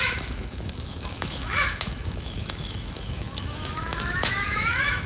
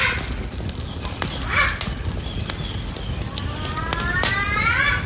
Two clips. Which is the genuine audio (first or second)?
second